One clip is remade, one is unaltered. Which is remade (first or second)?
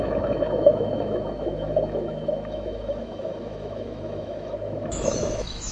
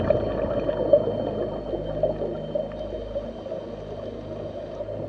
first